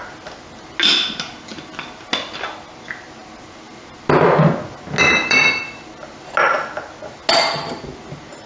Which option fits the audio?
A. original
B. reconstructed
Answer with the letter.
A